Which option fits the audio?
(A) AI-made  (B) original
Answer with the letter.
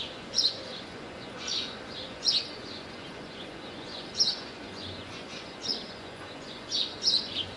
A